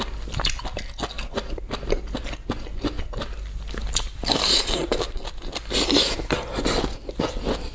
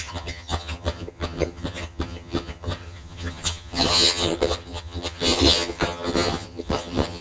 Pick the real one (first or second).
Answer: first